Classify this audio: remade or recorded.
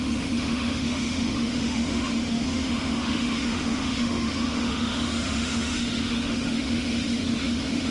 remade